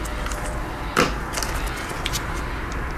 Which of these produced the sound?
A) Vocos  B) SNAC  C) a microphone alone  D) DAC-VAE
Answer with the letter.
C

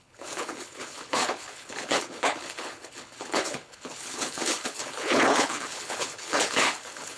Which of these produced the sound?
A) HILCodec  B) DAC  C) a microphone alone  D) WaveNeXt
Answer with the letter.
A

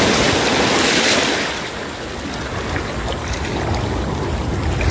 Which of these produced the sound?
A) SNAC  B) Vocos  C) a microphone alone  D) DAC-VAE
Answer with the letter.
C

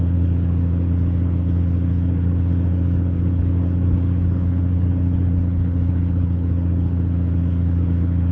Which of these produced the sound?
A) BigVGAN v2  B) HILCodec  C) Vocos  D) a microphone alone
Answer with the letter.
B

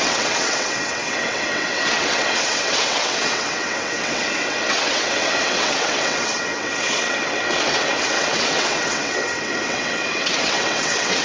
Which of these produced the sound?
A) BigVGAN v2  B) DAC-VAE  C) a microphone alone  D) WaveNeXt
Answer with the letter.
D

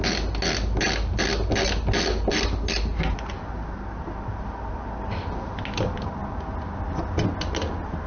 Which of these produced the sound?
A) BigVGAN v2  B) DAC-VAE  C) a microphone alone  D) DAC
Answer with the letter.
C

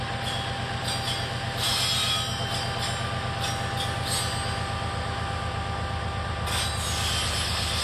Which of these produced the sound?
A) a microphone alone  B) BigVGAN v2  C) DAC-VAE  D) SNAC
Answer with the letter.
A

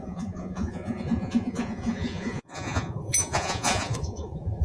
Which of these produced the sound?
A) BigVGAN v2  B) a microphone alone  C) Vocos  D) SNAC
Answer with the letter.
C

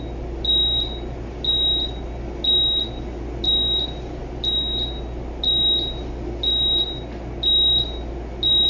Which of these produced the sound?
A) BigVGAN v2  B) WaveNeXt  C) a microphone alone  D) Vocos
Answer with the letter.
C